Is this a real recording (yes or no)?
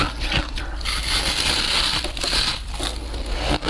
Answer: yes